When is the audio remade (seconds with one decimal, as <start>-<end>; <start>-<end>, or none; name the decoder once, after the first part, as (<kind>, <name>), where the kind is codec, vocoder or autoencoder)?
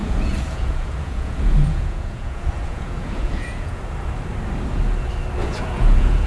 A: 0.0-3.8 (vocoder, Vocos); 5.4-6.3